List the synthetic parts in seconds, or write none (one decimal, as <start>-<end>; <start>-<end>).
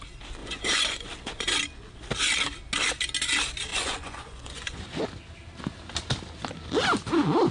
0.4-1.6; 3.7-4.8